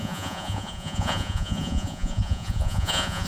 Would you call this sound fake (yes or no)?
yes